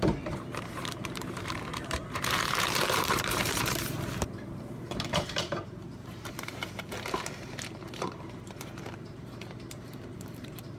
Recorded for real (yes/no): no